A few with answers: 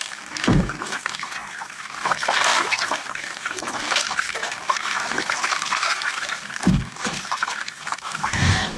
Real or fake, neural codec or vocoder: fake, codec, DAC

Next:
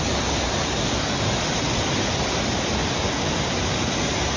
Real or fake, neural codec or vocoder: real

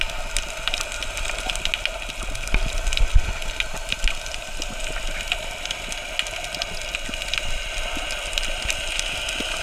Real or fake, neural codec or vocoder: real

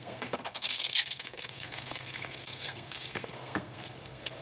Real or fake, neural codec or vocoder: fake, codec, SNAC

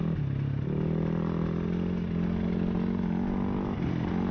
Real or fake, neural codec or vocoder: real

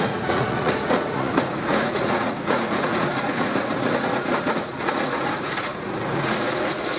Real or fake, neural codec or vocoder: fake, vocoder, Vocos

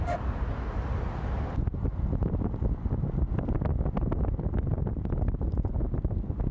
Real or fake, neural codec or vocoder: real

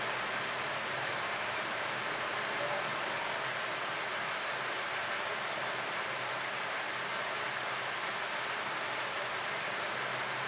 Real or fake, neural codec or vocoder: real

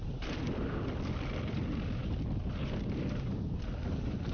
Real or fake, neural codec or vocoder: real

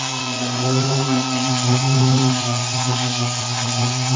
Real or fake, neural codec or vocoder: fake, vocoder, Vocos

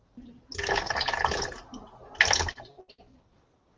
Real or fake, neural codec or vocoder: real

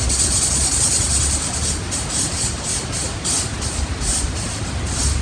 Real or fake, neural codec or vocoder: real